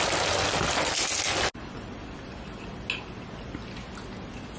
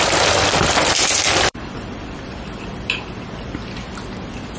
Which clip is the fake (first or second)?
second